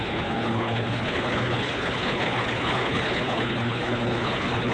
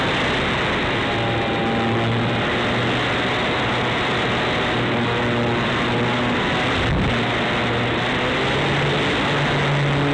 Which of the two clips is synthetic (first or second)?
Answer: first